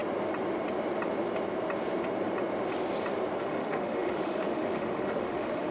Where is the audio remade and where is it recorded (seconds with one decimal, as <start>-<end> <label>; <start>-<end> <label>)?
0.0-3.4 recorded; 3.4-5.7 remade